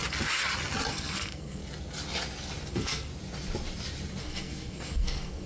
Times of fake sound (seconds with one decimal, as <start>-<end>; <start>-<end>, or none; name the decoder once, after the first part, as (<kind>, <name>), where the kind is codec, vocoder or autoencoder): 0.9-1.6 (codec, SNAC); 2.7-3.1; 4.2-5.5